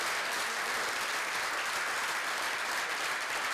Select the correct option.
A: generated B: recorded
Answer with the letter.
B